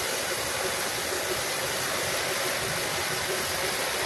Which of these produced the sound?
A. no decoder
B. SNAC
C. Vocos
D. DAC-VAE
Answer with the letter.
A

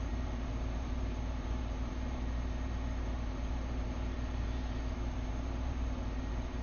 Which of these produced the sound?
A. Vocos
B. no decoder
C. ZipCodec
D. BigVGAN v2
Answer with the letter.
D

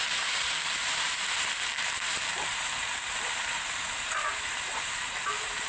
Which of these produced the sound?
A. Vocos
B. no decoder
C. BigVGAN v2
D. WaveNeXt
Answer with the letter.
C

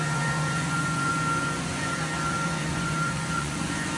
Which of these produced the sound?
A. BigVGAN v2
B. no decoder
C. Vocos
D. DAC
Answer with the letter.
C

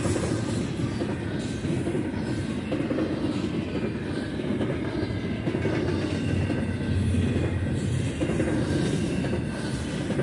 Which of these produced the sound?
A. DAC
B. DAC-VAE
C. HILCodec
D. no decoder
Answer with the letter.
D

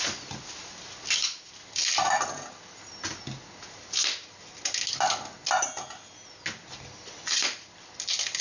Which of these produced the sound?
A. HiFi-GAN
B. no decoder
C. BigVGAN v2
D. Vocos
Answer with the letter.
B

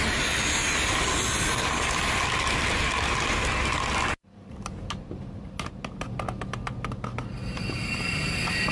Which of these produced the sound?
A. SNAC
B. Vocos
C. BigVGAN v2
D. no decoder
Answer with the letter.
D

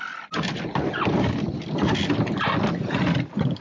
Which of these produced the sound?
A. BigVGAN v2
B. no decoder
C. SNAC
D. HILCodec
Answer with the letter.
B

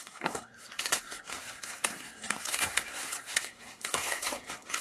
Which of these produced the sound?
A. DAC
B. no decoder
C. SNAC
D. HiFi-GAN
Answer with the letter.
C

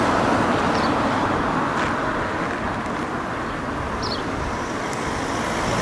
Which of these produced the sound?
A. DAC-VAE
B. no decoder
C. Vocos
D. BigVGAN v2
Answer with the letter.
B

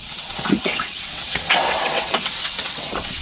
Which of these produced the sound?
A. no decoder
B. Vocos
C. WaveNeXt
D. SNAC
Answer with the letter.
C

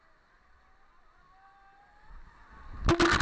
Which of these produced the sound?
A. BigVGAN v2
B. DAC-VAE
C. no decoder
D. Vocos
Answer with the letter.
C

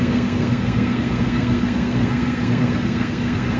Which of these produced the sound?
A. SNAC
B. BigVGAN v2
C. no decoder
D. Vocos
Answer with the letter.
A